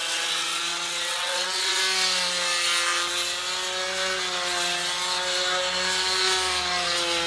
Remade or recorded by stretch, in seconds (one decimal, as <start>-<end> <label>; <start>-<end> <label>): 0.0-1.8 remade; 1.8-7.3 recorded